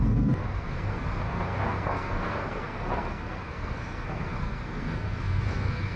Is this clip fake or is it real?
fake